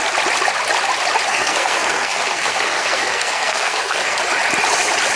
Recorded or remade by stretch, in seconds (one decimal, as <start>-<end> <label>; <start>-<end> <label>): 0.0-1.3 recorded; 1.3-4.2 remade; 4.2-5.2 recorded